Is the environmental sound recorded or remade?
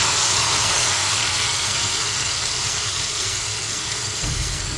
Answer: remade